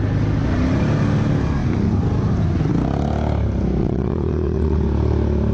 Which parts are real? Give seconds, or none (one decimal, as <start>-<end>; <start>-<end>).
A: 0.0-3.8; 4.8-5.5